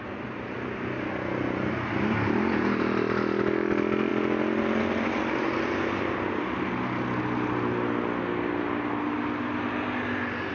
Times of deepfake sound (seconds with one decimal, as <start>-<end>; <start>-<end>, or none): none